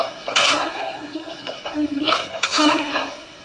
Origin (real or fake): fake